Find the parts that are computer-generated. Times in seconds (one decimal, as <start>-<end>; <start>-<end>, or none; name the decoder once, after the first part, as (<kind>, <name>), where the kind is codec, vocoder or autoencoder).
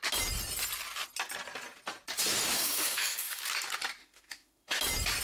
2.5-3.4 (autoencoder, DAC-VAE); 4.0-4.8